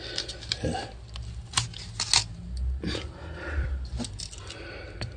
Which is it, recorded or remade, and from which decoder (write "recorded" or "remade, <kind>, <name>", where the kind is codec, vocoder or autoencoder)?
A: recorded